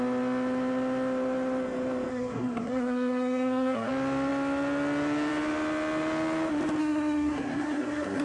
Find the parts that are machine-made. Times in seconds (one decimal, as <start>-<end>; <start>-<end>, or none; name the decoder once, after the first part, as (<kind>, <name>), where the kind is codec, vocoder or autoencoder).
2.1-3.9 (codec, SNAC); 6.8-8.2